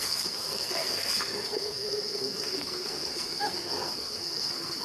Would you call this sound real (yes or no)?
no